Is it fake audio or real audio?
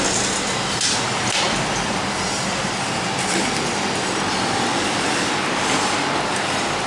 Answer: real